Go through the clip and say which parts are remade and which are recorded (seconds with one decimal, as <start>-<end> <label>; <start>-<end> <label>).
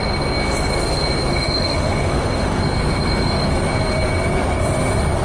0.0-1.3 recorded; 1.3-2.6 remade; 2.6-5.2 recorded